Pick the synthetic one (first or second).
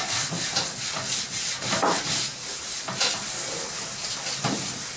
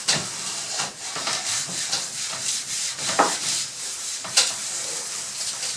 second